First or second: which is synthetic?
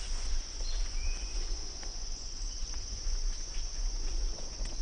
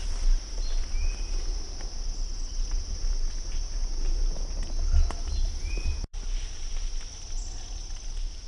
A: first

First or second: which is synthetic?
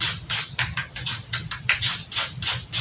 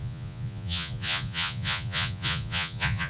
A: second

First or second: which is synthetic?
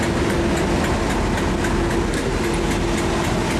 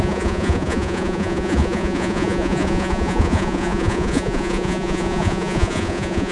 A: second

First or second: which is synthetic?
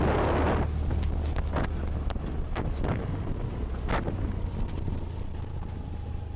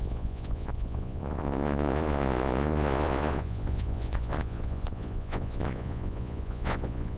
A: second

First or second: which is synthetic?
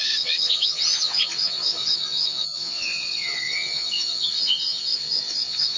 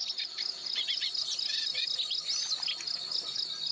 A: first